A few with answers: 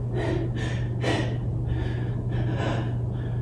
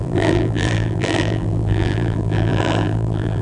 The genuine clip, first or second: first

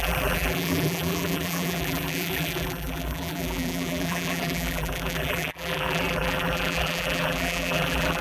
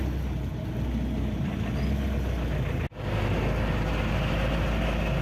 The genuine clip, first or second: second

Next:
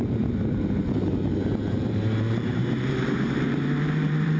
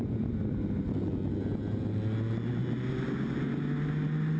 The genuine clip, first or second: second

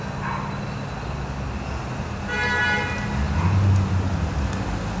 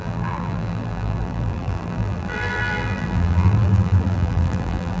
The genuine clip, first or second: first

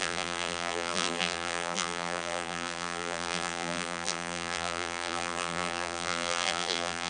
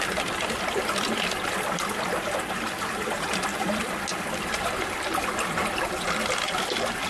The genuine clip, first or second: second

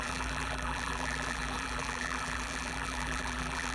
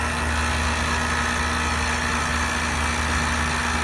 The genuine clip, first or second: second